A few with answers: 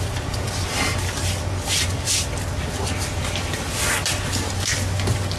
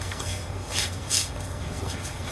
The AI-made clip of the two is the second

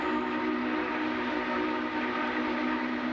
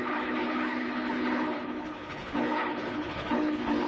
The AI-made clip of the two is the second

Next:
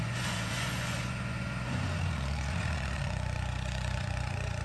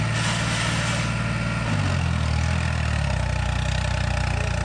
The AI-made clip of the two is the first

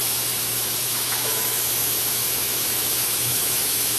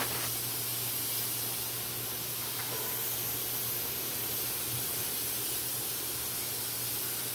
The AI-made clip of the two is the first